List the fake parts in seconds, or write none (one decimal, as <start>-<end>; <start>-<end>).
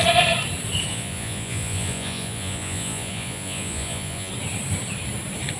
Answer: 0.9-4.3